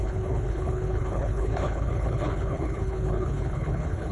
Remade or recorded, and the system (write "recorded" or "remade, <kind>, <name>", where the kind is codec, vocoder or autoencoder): remade, codec, HILCodec